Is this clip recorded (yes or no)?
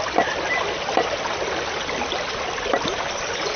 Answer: yes